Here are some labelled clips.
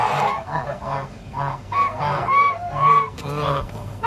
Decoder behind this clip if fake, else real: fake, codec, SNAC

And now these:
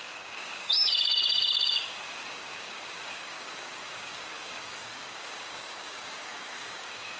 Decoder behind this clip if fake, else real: fake, codec, DAC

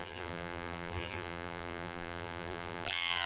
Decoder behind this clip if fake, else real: fake, vocoder, BigVGAN v2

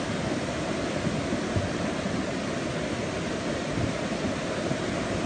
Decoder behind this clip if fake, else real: real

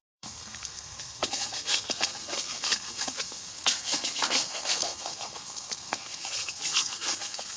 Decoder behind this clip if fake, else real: fake, codec, SNAC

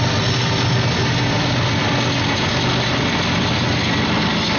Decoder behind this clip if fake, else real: real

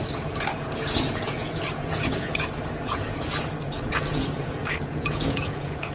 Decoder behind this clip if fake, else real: fake, vocoder, Vocos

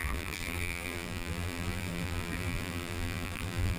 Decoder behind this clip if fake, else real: fake, vocoder, BigVGAN v2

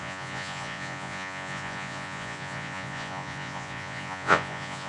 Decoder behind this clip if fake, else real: fake, vocoder, Vocos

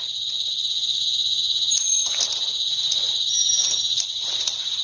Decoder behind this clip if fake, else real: real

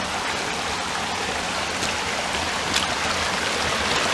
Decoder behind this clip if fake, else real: real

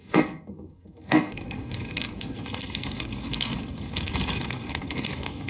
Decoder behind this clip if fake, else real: fake, codec, SNAC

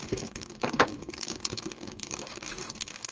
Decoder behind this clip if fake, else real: fake, codec, DAC